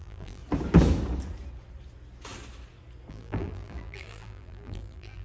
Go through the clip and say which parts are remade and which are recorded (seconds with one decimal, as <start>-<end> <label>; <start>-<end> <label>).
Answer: 0.0-0.4 remade; 0.4-3.1 recorded; 3.1-5.2 remade